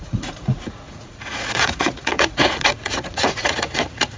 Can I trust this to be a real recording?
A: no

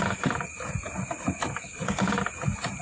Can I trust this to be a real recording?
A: yes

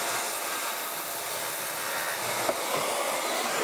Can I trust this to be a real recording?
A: yes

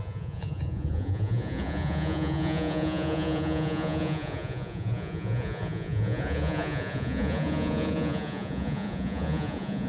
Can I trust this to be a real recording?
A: no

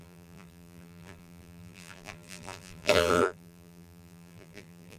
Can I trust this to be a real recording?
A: no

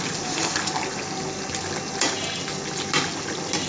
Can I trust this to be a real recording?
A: yes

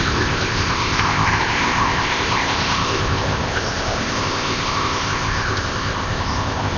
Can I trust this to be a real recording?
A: no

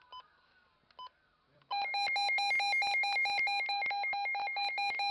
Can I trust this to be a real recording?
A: yes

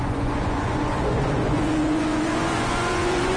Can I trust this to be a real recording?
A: no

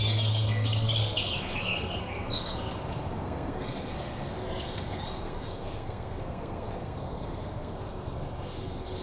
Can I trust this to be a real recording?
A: no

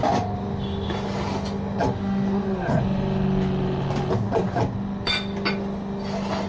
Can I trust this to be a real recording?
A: yes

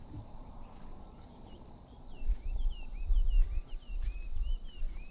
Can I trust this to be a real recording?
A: no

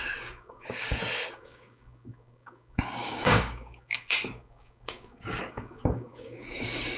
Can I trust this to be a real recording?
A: no